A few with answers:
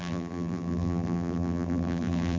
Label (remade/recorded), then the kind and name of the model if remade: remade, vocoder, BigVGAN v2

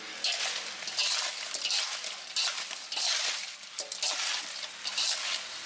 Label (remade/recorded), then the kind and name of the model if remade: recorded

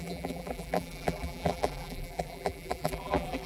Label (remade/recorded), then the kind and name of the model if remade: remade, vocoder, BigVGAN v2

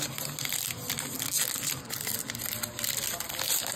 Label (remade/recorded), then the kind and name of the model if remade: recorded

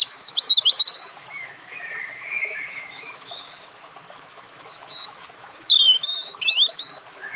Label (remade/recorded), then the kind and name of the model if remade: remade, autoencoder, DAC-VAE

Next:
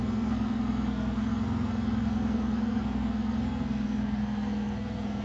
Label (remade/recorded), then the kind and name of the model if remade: remade, codec, SNAC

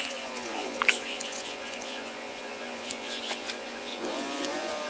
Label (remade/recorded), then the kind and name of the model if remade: remade, vocoder, Vocos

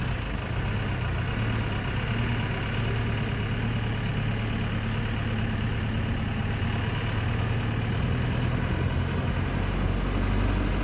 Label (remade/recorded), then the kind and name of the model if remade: recorded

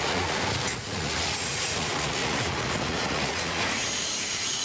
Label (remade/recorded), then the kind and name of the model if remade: remade, vocoder, Vocos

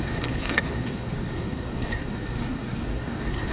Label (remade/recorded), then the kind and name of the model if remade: remade, codec, SNAC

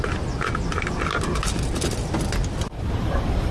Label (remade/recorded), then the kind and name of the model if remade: recorded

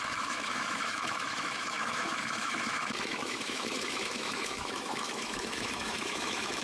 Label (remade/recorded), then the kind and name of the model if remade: remade, autoencoder, DAC-VAE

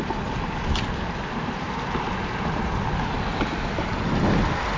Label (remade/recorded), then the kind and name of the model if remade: recorded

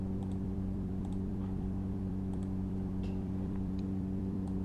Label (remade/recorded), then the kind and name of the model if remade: remade, vocoder, BigVGAN v2